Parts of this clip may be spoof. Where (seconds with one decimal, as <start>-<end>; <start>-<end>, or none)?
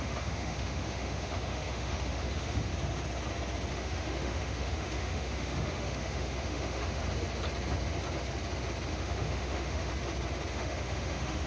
0.0-2.7; 3.7-7.0; 8.9-9.9; 10.5-11.5